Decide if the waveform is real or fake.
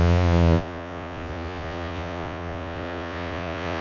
fake